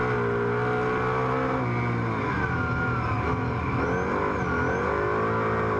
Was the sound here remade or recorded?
recorded